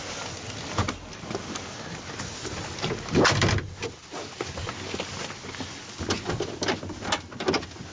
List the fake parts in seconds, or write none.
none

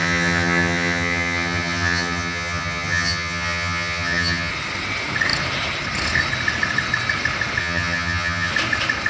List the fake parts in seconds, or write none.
0.0-4.5 (vocoder, HiFi-GAN); 7.6-8.5